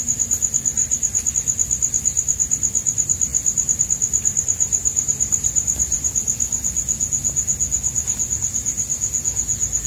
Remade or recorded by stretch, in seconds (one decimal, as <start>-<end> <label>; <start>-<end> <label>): 0.0-4.8 recorded; 4.8-6.1 remade; 6.1-9.9 recorded